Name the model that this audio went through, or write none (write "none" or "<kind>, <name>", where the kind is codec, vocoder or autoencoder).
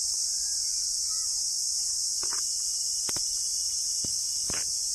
none